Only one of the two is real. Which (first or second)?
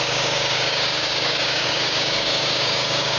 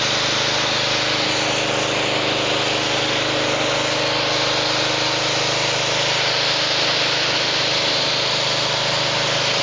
second